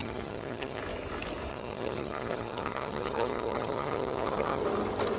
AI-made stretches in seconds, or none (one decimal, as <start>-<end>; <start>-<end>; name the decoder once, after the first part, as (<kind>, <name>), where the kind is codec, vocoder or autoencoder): 0.0-0.8 (vocoder, HiFi-GAN); 1.5-4.6